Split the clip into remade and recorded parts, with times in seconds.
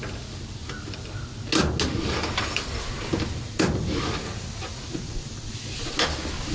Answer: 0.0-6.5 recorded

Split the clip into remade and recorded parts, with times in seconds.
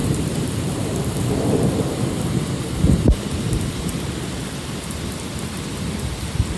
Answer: 0.0-4.0 remade; 4.0-6.6 recorded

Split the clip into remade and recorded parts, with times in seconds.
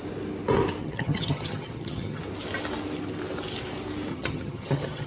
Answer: 0.0-0.8 recorded; 0.8-2.2 remade; 2.2-4.1 recorded; 4.1-5.1 remade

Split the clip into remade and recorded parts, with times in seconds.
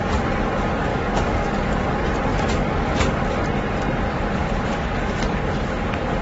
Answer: 0.0-0.9 recorded; 0.9-1.8 remade; 1.8-2.3 recorded; 2.3-3.0 remade; 3.0-4.1 recorded; 4.1-5.2 remade; 5.2-6.2 recorded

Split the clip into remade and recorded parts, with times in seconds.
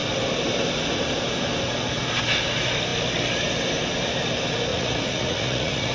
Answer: 0.0-4.7 recorded; 4.7-5.9 remade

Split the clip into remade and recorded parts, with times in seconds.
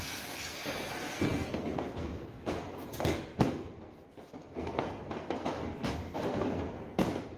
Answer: 0.0-7.4 remade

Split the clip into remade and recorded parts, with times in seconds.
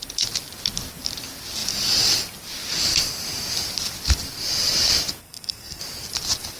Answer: 0.0-5.2 recorded; 5.2-5.8 remade; 5.8-6.6 recorded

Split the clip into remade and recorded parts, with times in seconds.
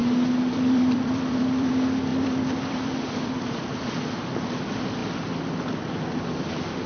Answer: 0.0-0.5 recorded; 0.5-5.0 remade; 5.0-5.8 recorded; 5.8-6.9 remade